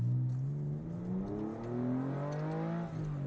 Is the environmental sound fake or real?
real